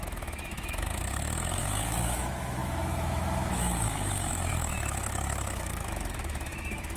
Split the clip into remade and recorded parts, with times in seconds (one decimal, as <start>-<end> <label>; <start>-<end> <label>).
0.0-7.0 remade

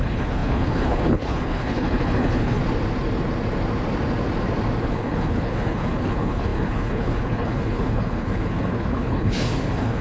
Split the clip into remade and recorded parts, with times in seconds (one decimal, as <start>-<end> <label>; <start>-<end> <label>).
0.0-2.6 remade; 2.6-4.8 recorded; 4.8-10.0 remade

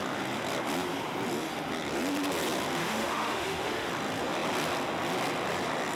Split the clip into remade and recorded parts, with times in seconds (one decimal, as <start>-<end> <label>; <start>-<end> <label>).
0.0-2.8 recorded; 2.8-3.9 remade; 3.9-5.9 recorded

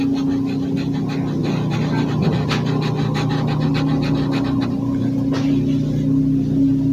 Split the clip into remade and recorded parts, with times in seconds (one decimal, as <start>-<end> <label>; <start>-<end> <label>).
0.0-6.9 recorded

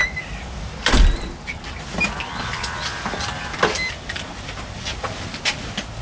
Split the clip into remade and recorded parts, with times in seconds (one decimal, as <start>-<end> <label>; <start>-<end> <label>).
0.0-6.0 recorded

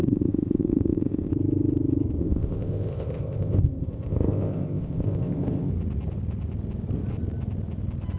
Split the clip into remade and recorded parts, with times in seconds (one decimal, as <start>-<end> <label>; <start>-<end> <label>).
0.0-1.3 remade; 1.3-2.2 recorded; 2.2-5.7 remade; 5.7-8.2 recorded

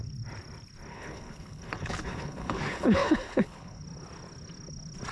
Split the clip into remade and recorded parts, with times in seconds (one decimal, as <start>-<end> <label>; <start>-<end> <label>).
0.0-0.9 recorded; 0.9-3.8 remade; 3.8-5.1 recorded

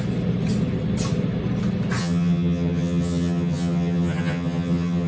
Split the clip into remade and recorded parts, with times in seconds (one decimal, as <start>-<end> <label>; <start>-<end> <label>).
0.0-2.0 recorded; 2.0-5.1 remade